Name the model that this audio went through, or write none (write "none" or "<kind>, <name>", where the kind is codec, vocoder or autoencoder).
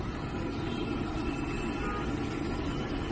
none